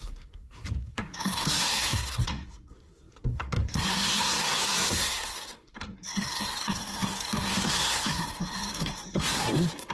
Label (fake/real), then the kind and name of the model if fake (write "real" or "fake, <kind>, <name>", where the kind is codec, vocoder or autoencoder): fake, codec, SNAC